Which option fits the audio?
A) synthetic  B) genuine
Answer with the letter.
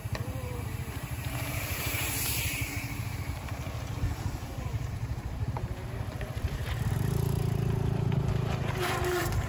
A